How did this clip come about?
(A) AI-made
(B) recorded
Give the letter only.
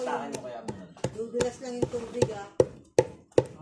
B